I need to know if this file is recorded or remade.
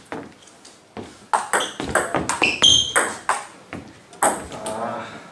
recorded